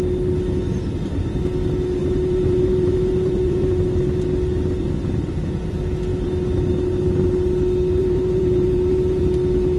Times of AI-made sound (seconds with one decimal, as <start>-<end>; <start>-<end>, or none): 2.0-3.7; 8.0-9.2